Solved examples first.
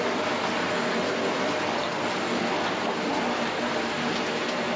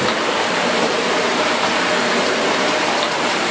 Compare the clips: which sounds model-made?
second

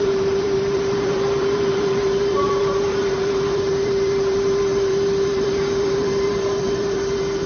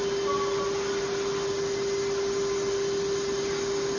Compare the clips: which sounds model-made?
first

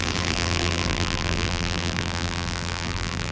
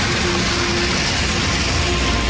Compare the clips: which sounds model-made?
first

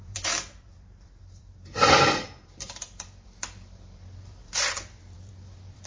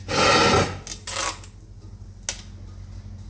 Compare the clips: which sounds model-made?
first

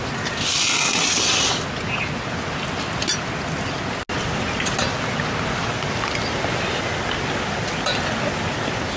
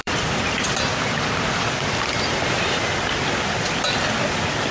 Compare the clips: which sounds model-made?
second